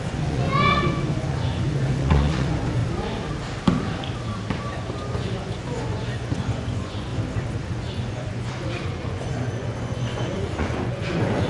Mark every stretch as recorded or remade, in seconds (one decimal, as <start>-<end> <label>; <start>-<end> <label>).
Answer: 0.0-2.8 remade; 2.8-4.6 recorded; 4.6-7.1 remade; 7.1-7.7 recorded; 7.7-11.5 remade